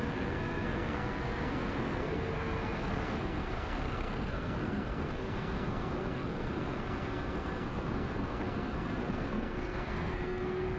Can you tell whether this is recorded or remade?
remade